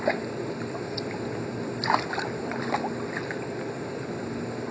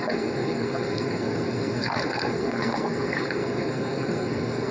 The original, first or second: first